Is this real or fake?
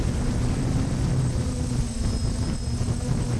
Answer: real